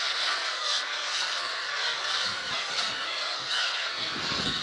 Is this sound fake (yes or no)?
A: yes